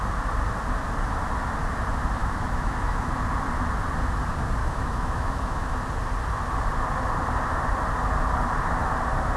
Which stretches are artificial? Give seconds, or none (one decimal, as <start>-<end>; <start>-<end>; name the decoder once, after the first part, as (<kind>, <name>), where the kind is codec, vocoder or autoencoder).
2.2-3.1 (autoencoder, DAC-VAE); 4.6-5.7